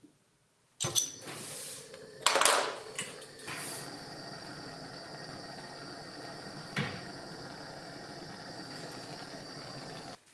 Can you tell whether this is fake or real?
real